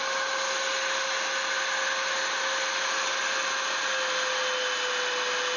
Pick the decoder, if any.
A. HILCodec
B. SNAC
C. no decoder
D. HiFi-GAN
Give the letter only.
C